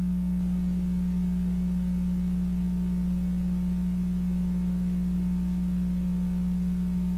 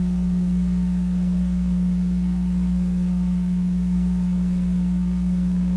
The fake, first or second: second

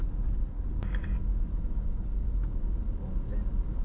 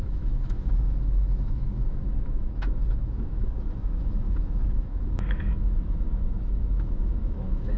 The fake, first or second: second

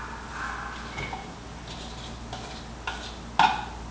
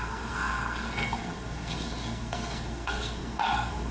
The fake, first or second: second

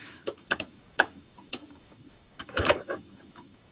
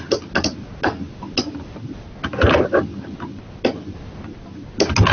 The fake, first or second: first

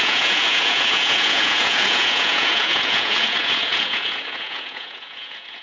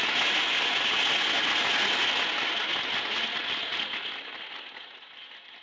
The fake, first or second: first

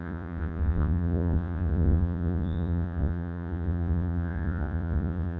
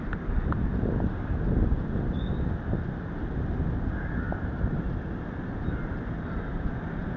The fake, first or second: first